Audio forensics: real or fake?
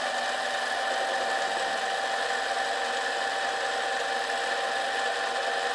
real